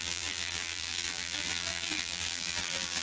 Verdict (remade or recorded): remade